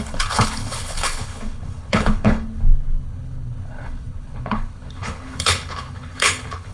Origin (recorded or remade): remade